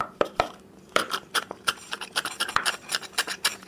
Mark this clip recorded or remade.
remade